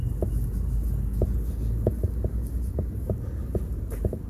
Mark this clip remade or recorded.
recorded